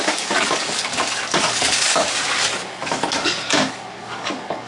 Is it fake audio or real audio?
fake